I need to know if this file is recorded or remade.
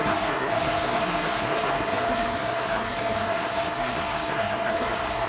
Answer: remade